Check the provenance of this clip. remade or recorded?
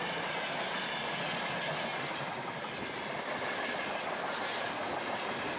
recorded